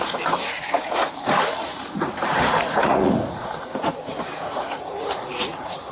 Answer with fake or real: fake